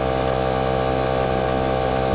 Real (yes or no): yes